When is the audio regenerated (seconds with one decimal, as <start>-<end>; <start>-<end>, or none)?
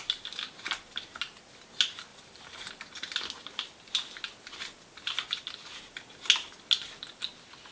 2.1-2.7